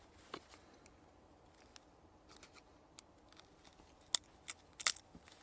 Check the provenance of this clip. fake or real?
real